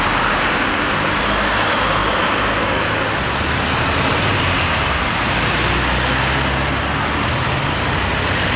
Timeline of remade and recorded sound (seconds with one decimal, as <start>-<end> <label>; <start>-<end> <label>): 0.0-8.6 recorded